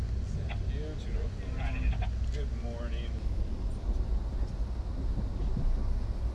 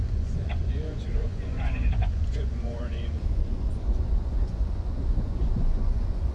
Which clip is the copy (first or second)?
second